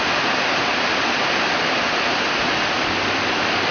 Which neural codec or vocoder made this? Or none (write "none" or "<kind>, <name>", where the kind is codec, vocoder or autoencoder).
none